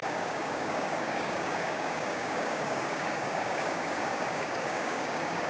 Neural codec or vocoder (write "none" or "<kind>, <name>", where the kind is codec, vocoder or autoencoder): codec, DAC